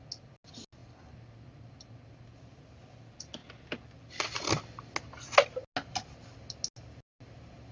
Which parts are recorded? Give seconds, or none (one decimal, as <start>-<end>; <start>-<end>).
0.0-7.7